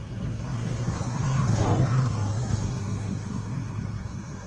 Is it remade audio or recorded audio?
remade